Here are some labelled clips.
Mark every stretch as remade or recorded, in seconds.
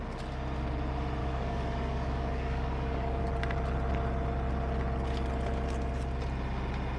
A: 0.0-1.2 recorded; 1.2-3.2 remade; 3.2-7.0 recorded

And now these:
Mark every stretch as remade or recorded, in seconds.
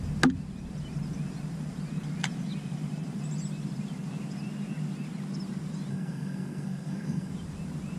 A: 0.0-5.9 recorded; 5.9-7.3 remade; 7.3-8.0 recorded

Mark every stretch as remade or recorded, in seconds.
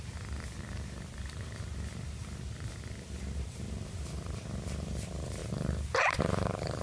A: 0.0-6.8 remade